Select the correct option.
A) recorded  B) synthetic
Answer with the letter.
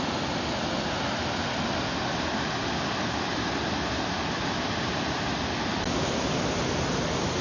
A